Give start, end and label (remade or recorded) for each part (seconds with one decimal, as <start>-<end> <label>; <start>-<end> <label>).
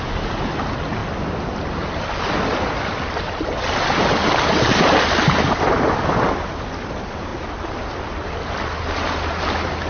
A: 0.0-9.9 recorded